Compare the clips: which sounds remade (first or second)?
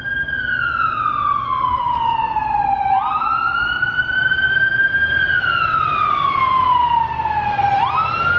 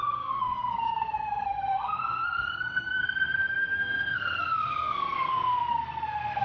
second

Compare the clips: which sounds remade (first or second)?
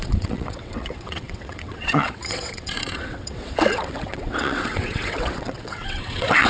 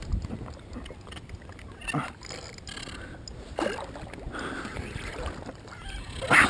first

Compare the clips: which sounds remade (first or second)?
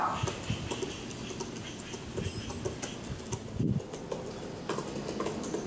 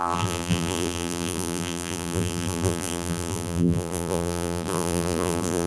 second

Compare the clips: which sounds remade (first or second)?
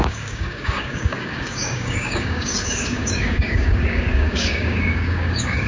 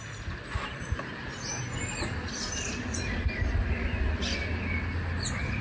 first